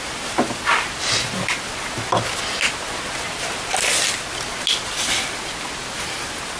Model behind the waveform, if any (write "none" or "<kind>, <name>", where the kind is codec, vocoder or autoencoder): none